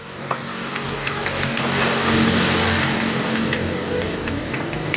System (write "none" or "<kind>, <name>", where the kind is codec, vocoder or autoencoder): codec, DAC